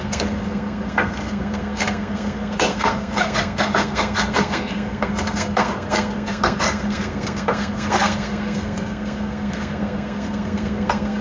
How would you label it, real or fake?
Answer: fake